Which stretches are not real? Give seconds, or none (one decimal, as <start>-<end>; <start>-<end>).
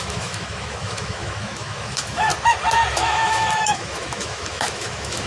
0.0-2.3; 2.9-5.3